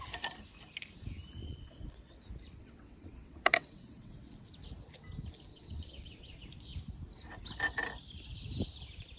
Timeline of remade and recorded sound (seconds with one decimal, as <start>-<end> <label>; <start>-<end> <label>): 0.0-1.4 recorded; 1.4-2.2 remade; 2.2-2.6 recorded; 2.6-4.5 remade; 4.5-5.5 recorded; 5.5-6.4 remade; 6.4-9.2 recorded

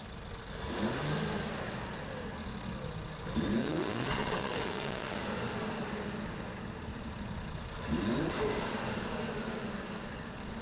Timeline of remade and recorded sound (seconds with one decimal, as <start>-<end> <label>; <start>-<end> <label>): 0.0-3.6 recorded; 3.6-5.2 remade; 5.2-10.6 recorded

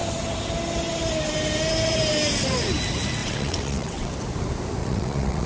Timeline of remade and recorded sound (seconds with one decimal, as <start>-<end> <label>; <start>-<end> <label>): 0.0-3.2 recorded; 3.2-4.1 remade; 4.1-4.8 recorded; 4.8-5.5 remade

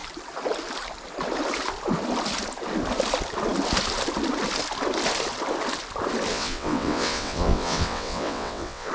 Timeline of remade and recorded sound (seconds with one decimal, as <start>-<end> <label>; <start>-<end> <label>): 0.0-6.3 recorded; 6.3-8.9 remade